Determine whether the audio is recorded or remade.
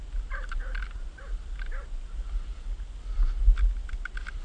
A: recorded